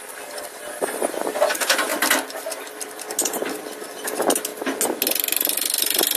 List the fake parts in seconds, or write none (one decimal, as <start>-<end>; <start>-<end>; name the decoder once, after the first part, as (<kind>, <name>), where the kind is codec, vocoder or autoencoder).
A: 1.9-2.9 (vocoder, BigVGAN v2)